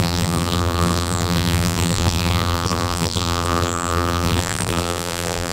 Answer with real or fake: fake